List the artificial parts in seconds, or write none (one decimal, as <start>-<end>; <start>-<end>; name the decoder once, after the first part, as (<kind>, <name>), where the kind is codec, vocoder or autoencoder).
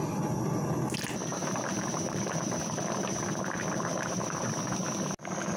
1.4-4.8 (vocoder, BigVGAN v2)